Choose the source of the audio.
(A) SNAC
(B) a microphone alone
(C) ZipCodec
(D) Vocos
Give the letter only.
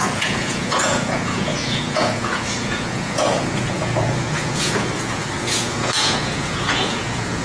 D